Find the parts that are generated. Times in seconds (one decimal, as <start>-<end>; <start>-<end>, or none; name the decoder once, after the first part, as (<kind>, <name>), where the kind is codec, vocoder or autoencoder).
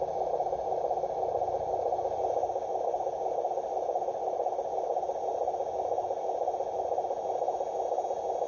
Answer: none